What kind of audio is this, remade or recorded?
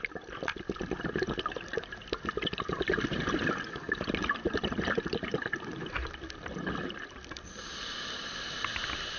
remade